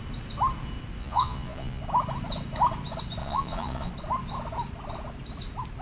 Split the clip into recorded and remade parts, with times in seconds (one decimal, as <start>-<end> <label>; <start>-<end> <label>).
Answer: 0.0-1.0 recorded; 1.0-1.8 remade; 1.8-3.2 recorded; 3.2-3.9 remade; 3.9-5.8 recorded